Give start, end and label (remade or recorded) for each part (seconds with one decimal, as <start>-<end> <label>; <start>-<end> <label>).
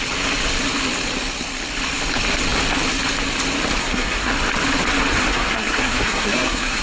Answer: 0.0-3.8 recorded; 3.8-4.3 remade; 4.3-5.3 recorded; 5.3-6.8 remade